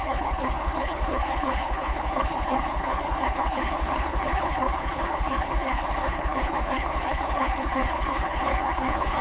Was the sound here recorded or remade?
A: remade